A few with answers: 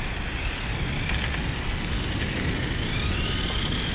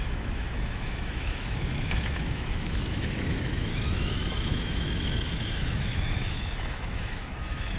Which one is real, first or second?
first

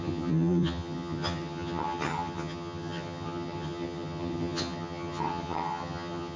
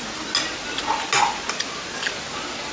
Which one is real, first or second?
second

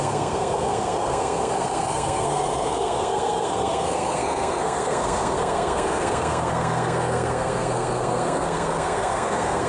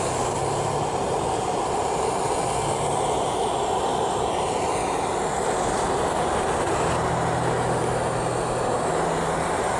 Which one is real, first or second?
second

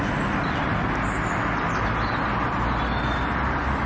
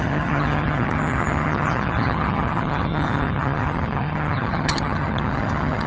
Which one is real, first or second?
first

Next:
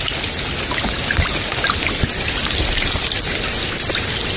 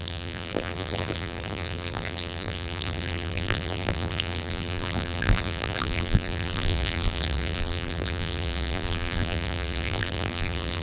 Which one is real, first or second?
first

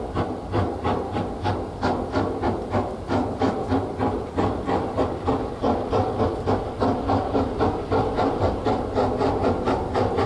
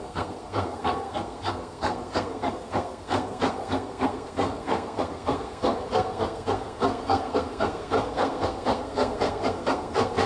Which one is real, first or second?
first